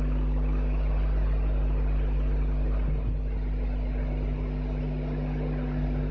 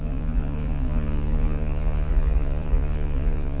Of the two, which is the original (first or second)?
first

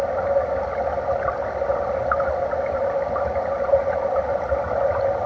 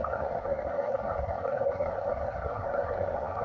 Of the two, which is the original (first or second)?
first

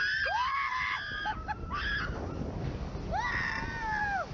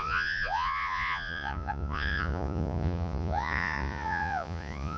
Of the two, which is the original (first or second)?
first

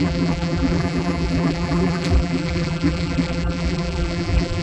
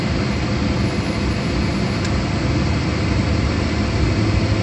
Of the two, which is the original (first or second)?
second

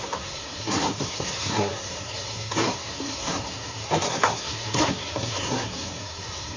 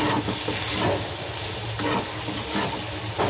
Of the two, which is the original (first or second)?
second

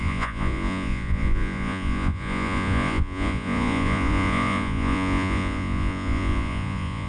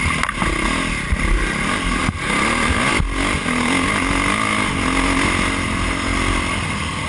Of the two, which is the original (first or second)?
second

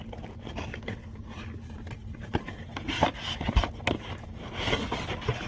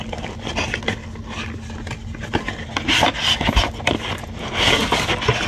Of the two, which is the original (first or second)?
second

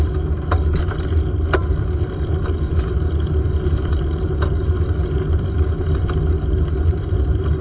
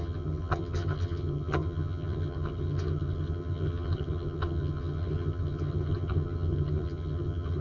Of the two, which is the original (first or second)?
first